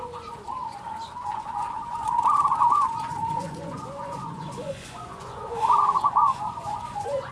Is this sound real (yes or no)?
no